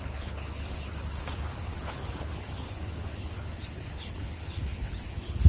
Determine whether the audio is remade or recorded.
remade